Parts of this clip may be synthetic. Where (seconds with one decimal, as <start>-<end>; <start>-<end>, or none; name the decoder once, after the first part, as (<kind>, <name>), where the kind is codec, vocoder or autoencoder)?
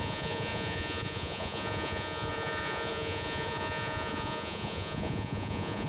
0.0-5.9 (vocoder, Vocos)